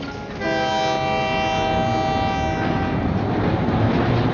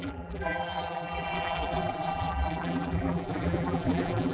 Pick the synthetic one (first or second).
second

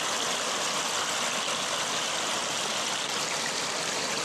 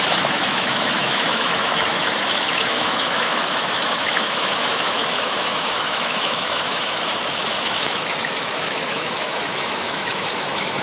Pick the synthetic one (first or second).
second